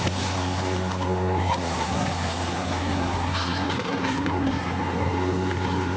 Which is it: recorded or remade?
remade